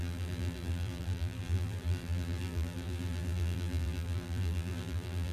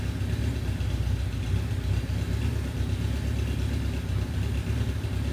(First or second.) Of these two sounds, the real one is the second